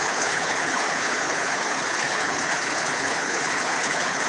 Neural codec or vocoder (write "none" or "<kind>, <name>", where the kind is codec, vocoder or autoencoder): codec, HILCodec